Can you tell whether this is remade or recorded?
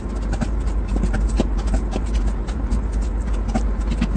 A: recorded